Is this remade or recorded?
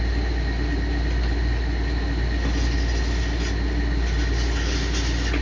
recorded